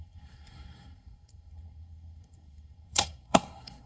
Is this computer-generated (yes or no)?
yes